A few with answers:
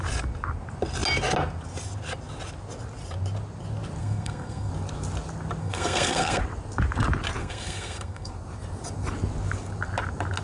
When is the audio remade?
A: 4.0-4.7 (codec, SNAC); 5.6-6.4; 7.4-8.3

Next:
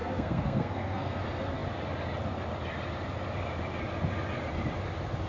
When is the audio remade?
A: 0.0-1.2 (codec, SNAC)

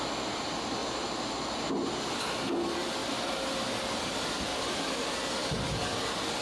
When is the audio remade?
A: none

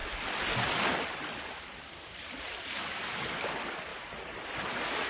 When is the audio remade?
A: 0.8-3.9 (vocoder, BigVGAN v2); 4.5-5.1

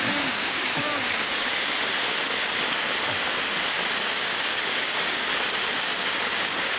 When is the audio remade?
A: 0.0-1.4 (codec, DAC); 4.0-5.3; 5.8-6.8